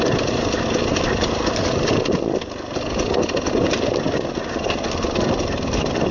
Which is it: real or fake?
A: real